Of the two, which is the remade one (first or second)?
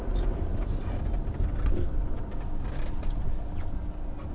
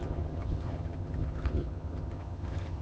second